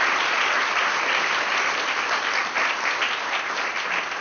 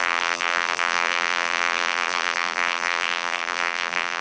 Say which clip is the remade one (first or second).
second